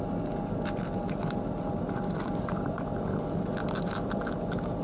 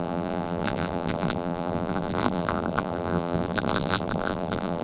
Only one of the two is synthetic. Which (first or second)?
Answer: second